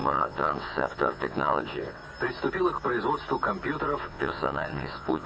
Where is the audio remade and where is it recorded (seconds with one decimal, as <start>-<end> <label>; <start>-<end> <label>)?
0.0-2.0 remade; 2.0-4.0 recorded; 4.0-5.3 remade